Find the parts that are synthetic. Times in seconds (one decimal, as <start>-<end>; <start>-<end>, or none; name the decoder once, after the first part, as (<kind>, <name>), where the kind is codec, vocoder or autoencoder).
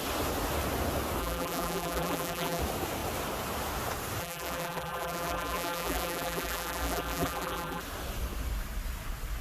1.2-2.6 (vocoder, BigVGAN v2); 4.2-7.8